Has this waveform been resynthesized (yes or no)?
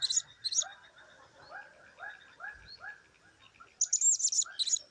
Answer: no